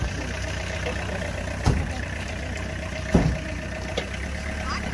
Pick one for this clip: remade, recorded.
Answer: recorded